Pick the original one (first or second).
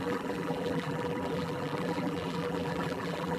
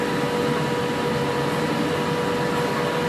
second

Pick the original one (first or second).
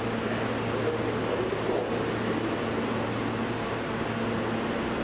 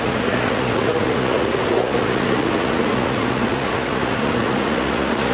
first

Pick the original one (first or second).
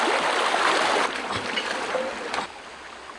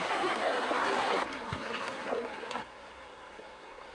first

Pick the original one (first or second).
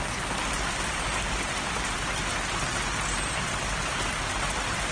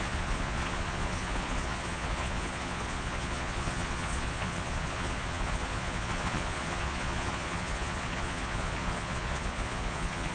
first